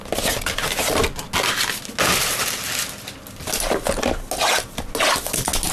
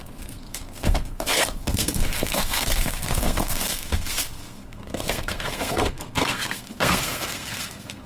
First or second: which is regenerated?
second